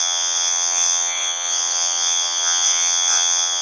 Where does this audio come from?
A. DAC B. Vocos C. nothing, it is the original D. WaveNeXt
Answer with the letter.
D